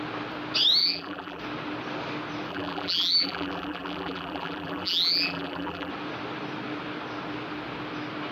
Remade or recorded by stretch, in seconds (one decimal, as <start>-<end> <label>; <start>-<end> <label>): 0.0-0.8 recorded; 0.8-1.4 remade; 1.4-2.5 recorded; 2.5-5.9 remade; 5.9-8.3 recorded